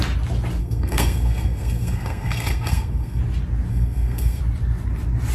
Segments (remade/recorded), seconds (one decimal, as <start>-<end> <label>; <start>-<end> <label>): 0.0-0.6 recorded; 0.6-3.2 remade; 3.2-3.7 recorded; 3.7-4.4 remade; 4.4-5.3 recorded